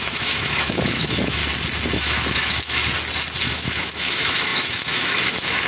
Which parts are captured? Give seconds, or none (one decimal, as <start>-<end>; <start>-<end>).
1.4-2.0; 2.8-3.4